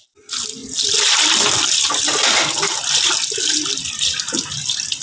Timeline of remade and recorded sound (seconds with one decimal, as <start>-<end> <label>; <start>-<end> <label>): 0.0-5.0 recorded